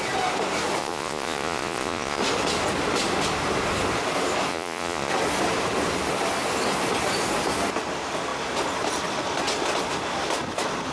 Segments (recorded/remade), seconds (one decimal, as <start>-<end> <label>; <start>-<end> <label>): 0.0-0.8 recorded; 0.8-2.2 remade; 2.2-4.5 recorded; 4.5-5.1 remade; 5.1-10.9 recorded